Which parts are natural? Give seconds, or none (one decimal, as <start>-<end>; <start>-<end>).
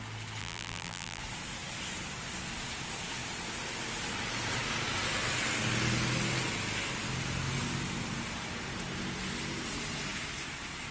0.0-0.4; 1.2-10.9